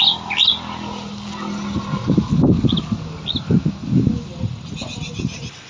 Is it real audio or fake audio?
real